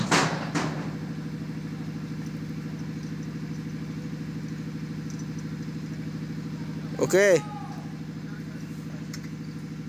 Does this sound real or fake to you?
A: real